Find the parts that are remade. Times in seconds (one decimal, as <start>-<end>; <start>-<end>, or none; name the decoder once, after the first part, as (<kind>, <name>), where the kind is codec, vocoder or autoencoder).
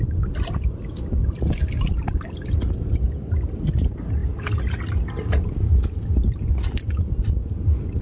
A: none